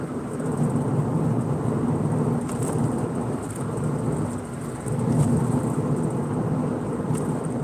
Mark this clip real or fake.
real